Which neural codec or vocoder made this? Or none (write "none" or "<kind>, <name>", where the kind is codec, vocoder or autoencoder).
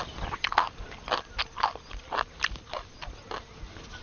none